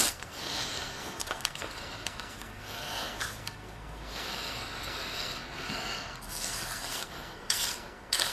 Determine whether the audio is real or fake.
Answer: fake